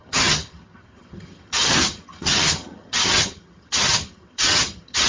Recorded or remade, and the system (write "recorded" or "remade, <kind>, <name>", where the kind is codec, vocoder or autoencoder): remade, vocoder, HiFi-GAN